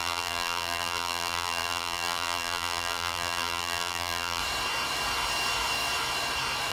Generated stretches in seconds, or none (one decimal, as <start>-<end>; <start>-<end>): 0.0-4.4